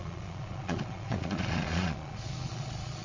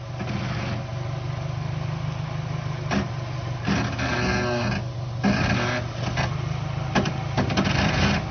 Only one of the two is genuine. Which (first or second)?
second